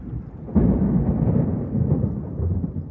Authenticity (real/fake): real